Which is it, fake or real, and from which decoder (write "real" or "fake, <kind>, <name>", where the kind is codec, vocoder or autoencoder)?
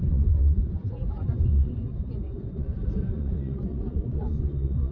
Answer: fake, vocoder, Vocos